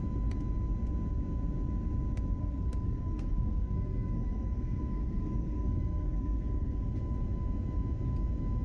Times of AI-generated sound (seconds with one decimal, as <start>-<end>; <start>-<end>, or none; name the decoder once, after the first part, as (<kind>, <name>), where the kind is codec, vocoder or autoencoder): 2.4-6.9 (codec, SNAC)